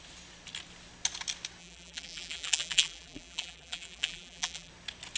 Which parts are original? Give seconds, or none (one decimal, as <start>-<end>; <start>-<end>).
0.0-1.6; 4.7-5.2